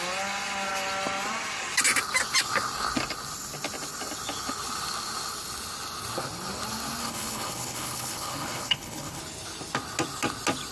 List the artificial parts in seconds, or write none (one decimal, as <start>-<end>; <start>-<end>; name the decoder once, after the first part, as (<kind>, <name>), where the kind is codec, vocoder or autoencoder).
7.0-9.2 (codec, HILCodec)